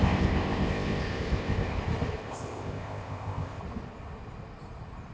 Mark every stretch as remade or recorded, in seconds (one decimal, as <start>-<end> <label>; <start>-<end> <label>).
0.0-1.8 remade; 1.8-2.2 recorded; 2.2-3.6 remade; 3.6-5.1 recorded